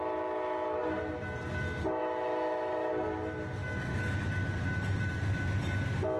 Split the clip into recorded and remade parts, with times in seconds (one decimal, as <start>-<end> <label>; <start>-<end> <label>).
0.0-2.0 recorded; 2.0-2.9 remade; 2.9-3.6 recorded; 3.6-4.3 remade; 4.3-6.2 recorded